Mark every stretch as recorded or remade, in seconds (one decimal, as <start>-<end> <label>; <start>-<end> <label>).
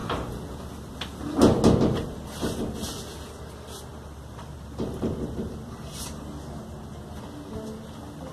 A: 0.0-3.9 recorded; 3.9-6.8 remade; 6.8-8.3 recorded